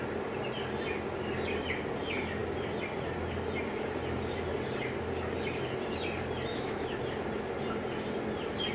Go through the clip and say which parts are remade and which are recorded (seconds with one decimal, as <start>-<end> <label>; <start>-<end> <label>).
0.0-6.5 recorded; 6.5-7.0 remade; 7.0-8.7 recorded